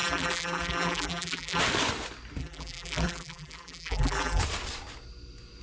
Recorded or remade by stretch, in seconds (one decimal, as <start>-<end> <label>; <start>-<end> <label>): 0.0-1.6 remade; 1.6-2.4 recorded; 2.4-4.4 remade; 4.4-5.6 recorded